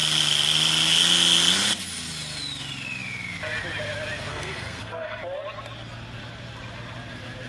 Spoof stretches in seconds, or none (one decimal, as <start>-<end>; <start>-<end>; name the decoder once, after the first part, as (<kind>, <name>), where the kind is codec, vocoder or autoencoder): 4.3-5.2 (codec, SNAC)